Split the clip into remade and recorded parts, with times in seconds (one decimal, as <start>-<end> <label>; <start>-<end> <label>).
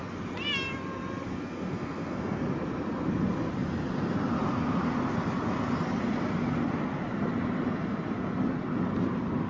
0.0-1.3 recorded; 1.3-2.4 remade; 2.4-9.5 recorded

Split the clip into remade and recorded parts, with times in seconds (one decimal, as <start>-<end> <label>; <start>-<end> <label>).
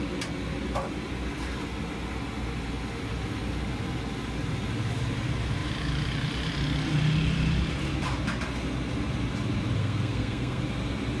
0.0-9.8 recorded; 9.8-10.6 remade; 10.6-11.2 recorded